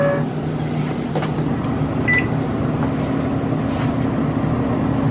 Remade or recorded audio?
recorded